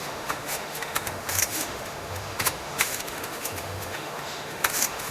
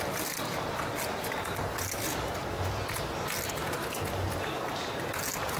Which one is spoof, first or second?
first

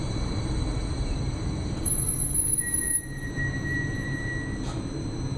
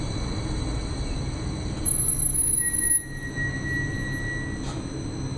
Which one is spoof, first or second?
first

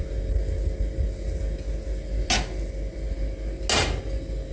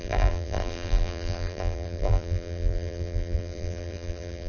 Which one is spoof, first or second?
second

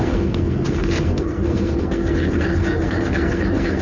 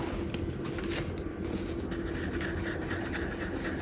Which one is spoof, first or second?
first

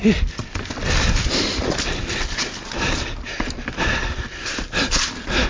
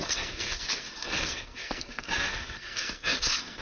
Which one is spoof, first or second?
second